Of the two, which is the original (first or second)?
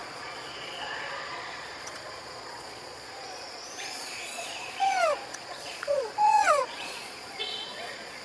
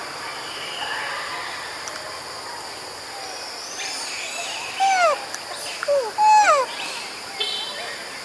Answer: second